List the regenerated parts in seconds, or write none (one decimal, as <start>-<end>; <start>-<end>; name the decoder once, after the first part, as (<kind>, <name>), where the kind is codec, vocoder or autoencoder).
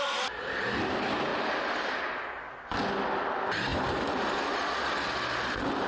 none